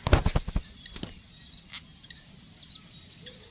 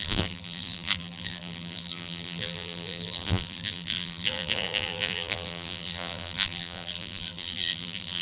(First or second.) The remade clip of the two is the second